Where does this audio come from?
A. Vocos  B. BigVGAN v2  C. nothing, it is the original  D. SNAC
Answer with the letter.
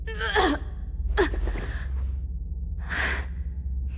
C